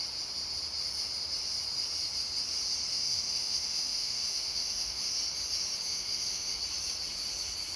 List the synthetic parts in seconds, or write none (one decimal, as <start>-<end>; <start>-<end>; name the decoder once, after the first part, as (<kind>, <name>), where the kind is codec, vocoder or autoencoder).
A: 2.9-5.0 (autoencoder, DAC-VAE); 5.9-6.6